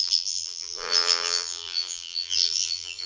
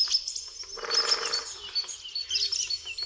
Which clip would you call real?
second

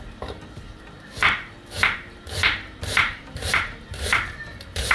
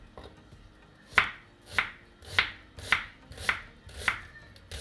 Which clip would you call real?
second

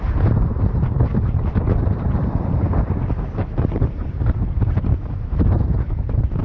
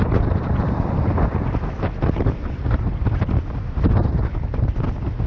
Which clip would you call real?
second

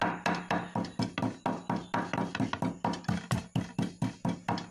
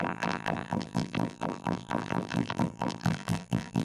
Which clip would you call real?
first